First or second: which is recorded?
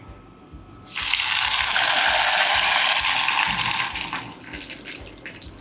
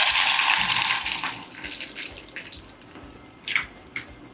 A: first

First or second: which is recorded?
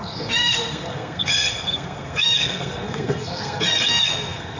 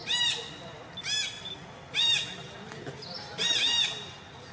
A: second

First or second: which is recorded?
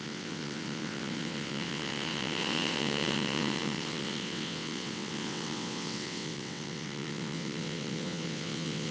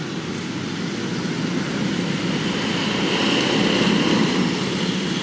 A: second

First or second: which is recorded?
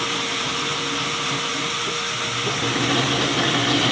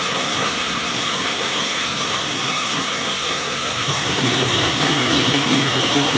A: first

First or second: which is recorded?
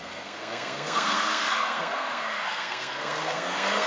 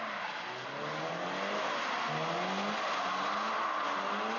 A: second